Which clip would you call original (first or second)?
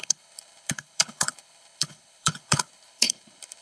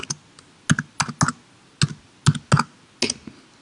second